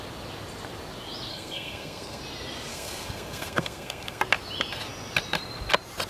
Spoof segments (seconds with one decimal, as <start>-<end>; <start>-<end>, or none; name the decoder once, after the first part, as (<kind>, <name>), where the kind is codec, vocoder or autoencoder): 1.3-2.2 (codec, SNAC); 2.7-4.2